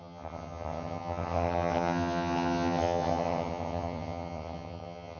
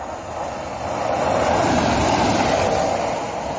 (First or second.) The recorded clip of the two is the second